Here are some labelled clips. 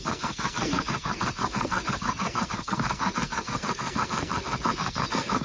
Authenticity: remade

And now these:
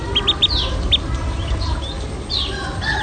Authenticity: recorded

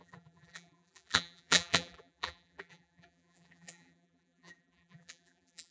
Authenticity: remade